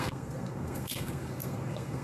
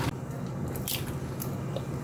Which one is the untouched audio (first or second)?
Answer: second